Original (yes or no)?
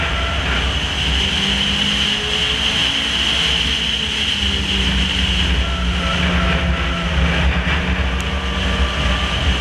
yes